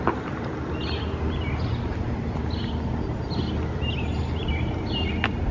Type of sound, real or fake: real